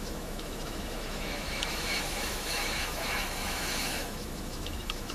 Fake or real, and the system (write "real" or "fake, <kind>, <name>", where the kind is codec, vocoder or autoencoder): fake, autoencoder, DAC-VAE